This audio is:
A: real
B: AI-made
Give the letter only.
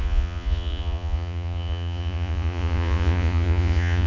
B